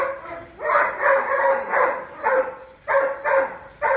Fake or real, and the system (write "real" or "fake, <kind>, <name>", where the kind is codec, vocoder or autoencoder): real